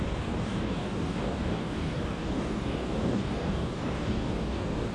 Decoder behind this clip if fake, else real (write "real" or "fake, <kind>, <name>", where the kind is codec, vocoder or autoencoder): fake, codec, DAC